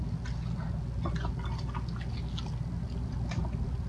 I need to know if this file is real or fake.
real